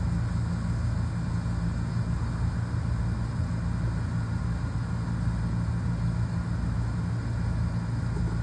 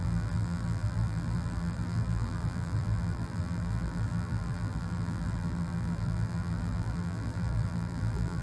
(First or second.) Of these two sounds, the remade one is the second